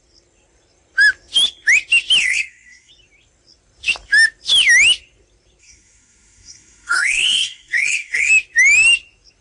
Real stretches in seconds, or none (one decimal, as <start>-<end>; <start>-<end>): 0.0-2.2; 2.9-5.6; 8.3-9.4